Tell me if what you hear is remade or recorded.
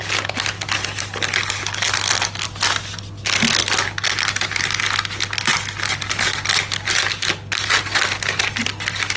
recorded